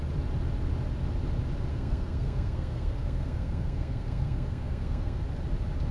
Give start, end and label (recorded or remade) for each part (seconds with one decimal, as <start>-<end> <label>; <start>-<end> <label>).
0.0-1.7 recorded; 1.7-5.2 remade; 5.2-5.9 recorded